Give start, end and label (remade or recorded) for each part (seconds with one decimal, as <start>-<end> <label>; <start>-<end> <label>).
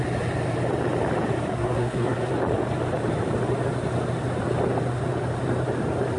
0.0-1.5 recorded; 1.5-2.3 remade; 2.3-6.2 recorded